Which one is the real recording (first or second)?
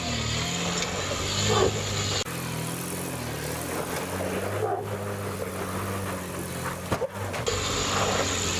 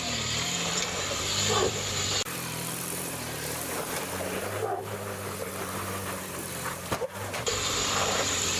first